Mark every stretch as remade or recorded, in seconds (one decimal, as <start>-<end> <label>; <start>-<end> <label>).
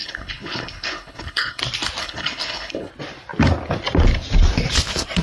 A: 0.0-1.6 remade; 1.6-2.0 recorded; 2.0-2.9 remade; 2.9-5.2 recorded